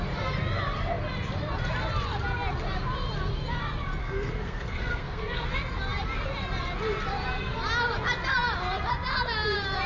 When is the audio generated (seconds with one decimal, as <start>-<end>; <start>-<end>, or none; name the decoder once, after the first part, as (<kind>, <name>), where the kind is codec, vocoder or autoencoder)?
4.0-5.5 (codec, SNAC)